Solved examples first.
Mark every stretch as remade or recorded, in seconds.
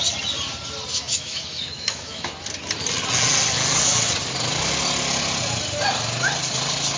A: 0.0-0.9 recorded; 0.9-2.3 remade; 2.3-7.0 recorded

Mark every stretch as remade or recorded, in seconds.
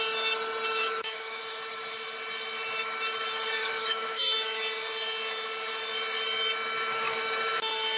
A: 0.0-0.8 recorded; 0.8-1.4 remade; 1.4-3.6 recorded; 3.6-4.6 remade; 4.6-8.0 recorded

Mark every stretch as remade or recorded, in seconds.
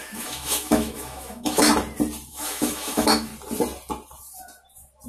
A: 0.0-1.7 remade; 1.7-2.3 recorded; 2.3-3.3 remade; 3.3-5.1 recorded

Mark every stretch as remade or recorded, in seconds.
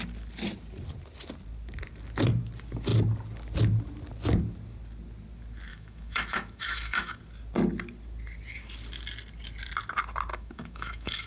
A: 0.0-5.7 recorded; 5.7-7.2 remade; 7.2-10.3 recorded; 10.3-11.3 remade